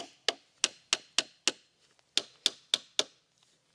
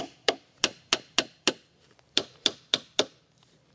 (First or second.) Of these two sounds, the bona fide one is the first